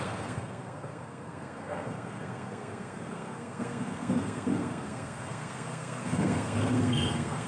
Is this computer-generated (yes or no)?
yes